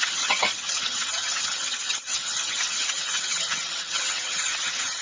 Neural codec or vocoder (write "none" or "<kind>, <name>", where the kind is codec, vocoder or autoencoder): vocoder, HiFi-GAN